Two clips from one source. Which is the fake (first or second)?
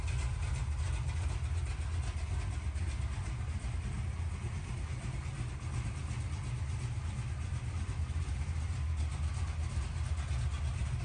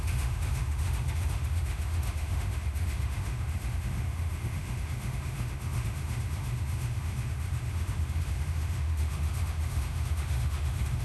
second